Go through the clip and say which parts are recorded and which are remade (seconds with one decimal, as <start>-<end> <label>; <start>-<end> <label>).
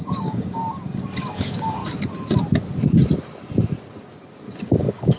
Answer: 0.0-0.6 remade; 0.6-1.2 recorded; 1.2-1.8 remade; 1.8-4.6 recorded; 4.6-5.2 remade